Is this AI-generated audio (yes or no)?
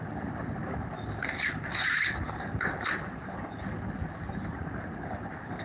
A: no